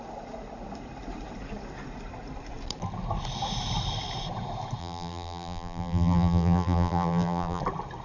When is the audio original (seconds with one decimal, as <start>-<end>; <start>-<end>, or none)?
0.0-4.8; 7.6-8.0